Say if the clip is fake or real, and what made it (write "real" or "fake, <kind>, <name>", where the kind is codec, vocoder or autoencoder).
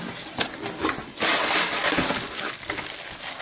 real